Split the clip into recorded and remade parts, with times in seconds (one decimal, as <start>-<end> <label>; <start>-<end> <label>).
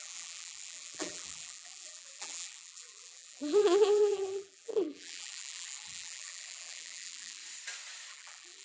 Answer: 0.0-7.4 remade; 7.4-8.1 recorded; 8.1-8.6 remade